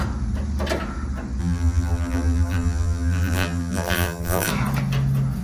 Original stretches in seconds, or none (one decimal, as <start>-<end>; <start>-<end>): 0.0-1.4; 4.5-5.4